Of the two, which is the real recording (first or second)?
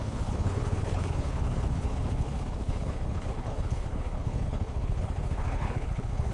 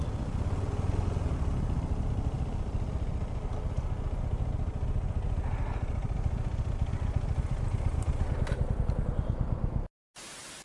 second